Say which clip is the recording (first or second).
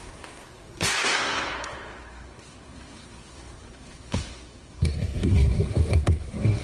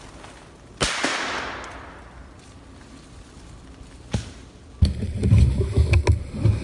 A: second